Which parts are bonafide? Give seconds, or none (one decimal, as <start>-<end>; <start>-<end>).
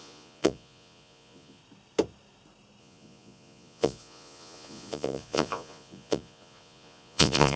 1.6-2.8